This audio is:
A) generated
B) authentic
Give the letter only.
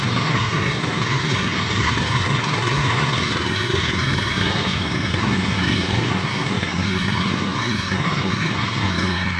A